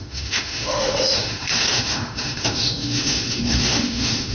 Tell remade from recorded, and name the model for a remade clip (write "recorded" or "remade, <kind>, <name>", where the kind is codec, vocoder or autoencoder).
remade, autoencoder, DAC-VAE